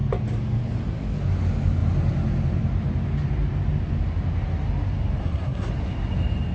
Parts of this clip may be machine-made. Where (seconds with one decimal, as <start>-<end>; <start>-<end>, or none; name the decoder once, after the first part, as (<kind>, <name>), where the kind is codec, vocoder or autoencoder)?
5.2-5.7 (codec, SNAC)